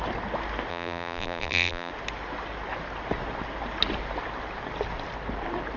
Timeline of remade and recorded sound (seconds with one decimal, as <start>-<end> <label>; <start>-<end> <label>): 0.0-0.7 recorded; 0.7-1.9 remade; 1.9-5.8 recorded